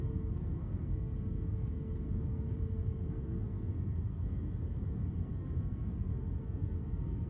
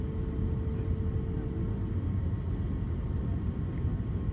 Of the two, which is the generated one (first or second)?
first